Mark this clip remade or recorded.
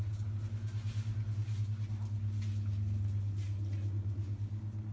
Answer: recorded